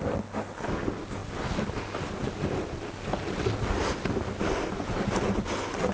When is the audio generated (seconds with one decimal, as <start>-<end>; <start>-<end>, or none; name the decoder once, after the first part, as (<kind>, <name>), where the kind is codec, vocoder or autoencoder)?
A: none